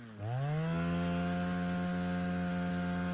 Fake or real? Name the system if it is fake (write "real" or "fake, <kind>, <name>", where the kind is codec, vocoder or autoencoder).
real